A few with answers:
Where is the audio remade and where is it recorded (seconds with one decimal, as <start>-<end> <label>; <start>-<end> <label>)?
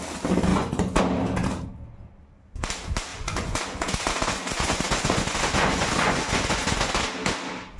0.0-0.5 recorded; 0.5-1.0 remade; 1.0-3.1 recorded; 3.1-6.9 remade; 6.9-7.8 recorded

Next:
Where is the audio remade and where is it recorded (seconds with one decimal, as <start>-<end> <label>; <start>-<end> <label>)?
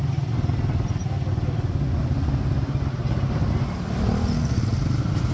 0.0-5.3 recorded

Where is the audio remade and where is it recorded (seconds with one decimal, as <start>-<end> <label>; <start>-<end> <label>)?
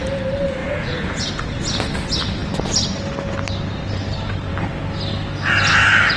0.0-0.6 recorded; 0.6-1.3 remade; 1.3-6.2 recorded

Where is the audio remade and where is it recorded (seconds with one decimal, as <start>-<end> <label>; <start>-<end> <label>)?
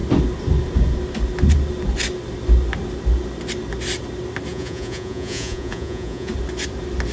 0.0-4.5 recorded; 4.5-6.3 remade; 6.3-7.1 recorded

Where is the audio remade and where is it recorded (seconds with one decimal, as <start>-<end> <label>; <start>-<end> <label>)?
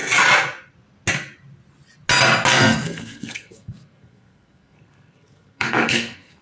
0.0-2.5 recorded; 2.5-6.4 remade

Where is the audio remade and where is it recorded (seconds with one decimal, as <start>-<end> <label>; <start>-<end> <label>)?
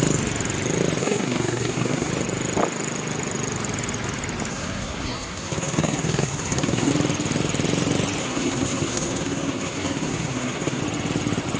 0.0-1.0 recorded; 1.0-2.1 remade; 2.1-4.5 recorded; 4.5-6.9 remade; 6.9-8.2 recorded; 8.2-10.8 remade; 10.8-11.6 recorded